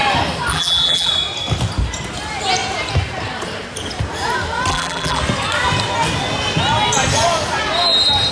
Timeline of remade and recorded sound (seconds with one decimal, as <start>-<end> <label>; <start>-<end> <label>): 0.0-0.5 recorded; 0.5-1.1 remade; 1.1-4.7 recorded; 4.7-5.2 remade; 5.2-8.3 recorded